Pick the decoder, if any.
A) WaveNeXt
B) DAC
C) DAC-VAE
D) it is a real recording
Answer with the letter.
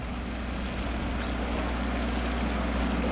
D